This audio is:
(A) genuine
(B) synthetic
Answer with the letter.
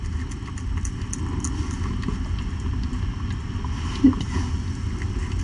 A